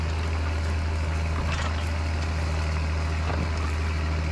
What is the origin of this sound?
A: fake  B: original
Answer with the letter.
B